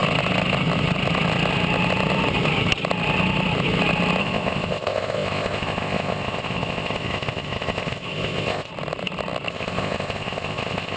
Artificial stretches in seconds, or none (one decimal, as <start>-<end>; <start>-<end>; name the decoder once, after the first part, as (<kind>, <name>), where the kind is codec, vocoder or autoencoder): 4.2-8.7 (codec, ZipCodec); 9.5-11.0